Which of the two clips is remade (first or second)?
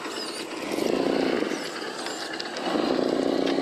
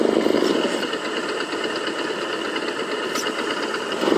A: second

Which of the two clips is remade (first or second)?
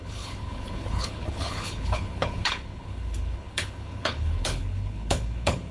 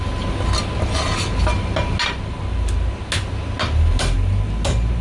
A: first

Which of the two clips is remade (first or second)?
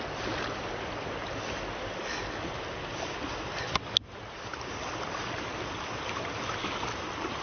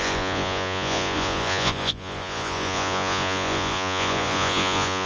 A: second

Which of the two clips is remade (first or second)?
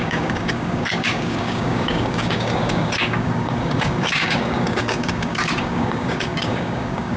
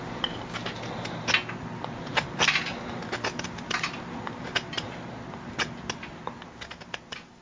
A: first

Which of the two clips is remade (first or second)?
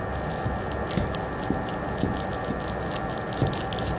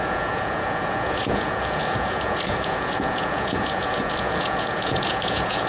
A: second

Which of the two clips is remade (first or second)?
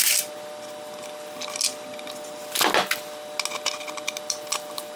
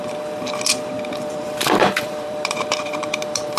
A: second